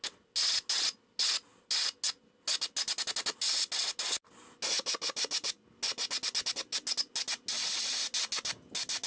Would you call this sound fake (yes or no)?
no